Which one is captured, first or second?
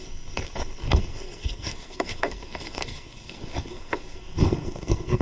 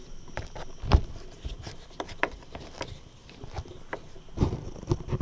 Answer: second